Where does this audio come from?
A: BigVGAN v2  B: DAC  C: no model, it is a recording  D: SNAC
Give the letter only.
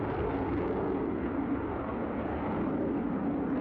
C